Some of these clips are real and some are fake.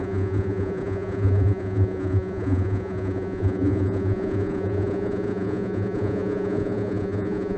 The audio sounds fake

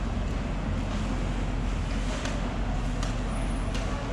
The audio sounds real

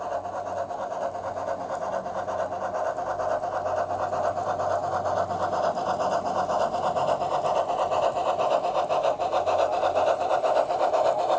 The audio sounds real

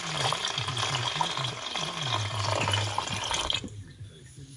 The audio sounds real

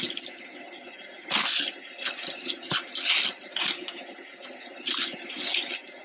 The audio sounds real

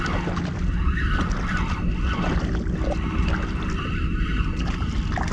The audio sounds real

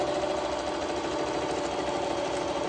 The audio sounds real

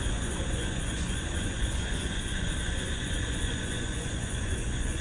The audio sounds fake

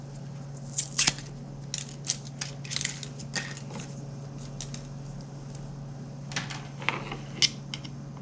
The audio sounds real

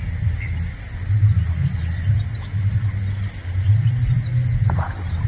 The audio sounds real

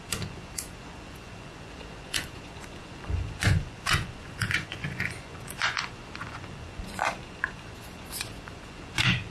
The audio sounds fake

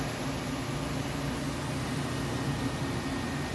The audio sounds real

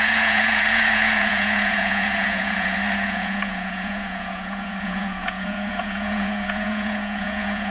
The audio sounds fake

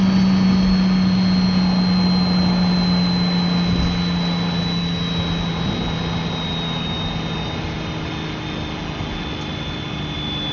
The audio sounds real